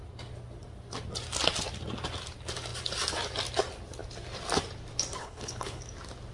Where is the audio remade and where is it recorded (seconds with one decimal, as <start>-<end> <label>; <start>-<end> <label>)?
0.0-5.2 recorded; 5.2-5.8 remade; 5.8-6.3 recorded